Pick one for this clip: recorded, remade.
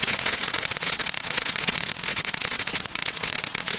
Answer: remade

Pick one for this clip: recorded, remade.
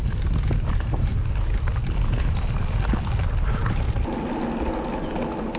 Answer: recorded